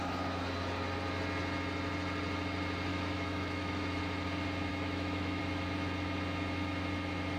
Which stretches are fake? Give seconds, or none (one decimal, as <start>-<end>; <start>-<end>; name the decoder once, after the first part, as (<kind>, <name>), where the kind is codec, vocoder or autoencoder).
2.9-4.0 (autoencoder, DAC-VAE); 4.7-5.4